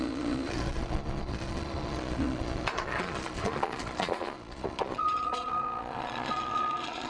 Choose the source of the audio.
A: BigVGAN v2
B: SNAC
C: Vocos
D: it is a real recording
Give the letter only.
C